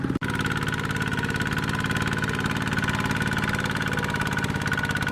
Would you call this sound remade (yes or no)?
no